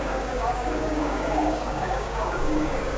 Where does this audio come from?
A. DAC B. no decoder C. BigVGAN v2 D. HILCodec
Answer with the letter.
A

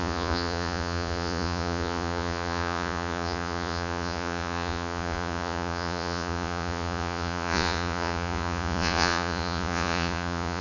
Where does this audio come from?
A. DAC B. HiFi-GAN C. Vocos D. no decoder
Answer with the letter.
C